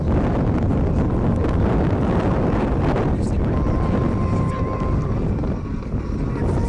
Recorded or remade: recorded